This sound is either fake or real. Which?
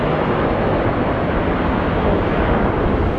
real